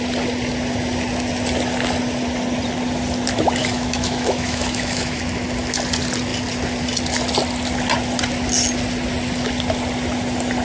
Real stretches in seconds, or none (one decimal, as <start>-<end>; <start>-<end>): 0.0-3.6; 5.2-10.6